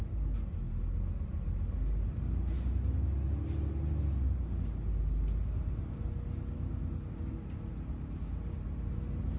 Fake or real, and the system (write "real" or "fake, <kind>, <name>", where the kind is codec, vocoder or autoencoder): real